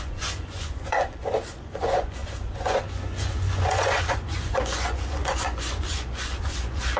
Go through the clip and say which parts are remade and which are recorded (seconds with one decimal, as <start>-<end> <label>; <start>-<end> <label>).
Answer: 0.0-7.0 remade